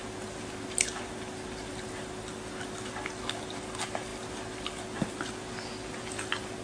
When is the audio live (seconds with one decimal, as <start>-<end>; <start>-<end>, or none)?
0.0-6.6